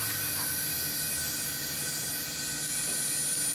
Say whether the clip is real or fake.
real